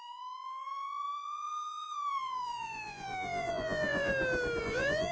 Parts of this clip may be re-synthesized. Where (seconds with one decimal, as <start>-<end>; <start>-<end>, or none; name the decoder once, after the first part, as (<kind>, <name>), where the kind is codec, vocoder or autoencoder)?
0.0-4.1 (vocoder, Vocos); 4.6-5.1